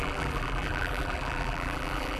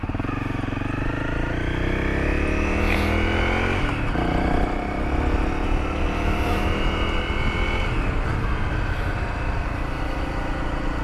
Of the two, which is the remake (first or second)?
first